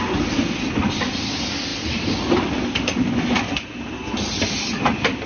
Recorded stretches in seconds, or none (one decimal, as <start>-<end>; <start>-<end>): 0.0-5.3